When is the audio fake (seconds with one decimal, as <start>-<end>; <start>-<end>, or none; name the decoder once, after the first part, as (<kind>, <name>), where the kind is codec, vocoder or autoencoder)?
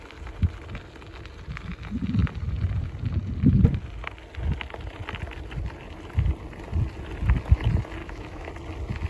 8.0-8.5 (autoencoder, DAC-VAE)